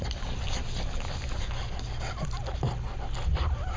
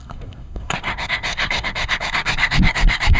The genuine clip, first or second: first